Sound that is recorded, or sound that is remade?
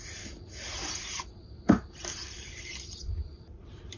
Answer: remade